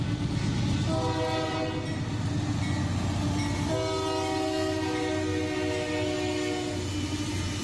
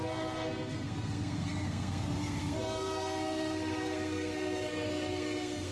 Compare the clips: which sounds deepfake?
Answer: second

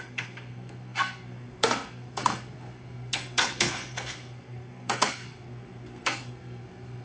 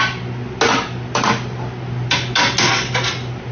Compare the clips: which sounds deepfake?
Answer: first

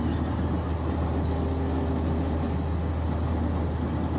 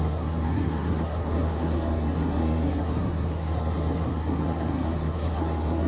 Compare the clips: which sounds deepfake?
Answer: second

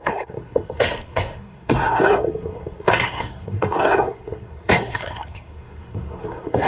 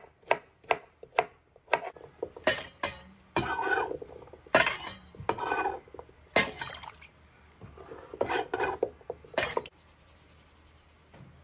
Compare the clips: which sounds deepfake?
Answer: first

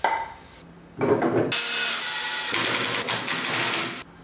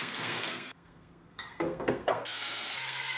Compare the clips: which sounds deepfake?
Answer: second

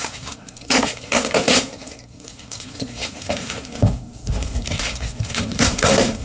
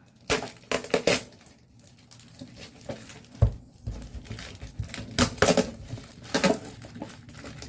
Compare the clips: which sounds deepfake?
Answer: first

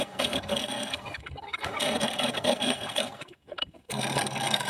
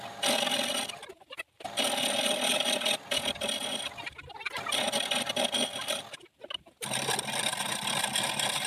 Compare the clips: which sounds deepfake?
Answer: first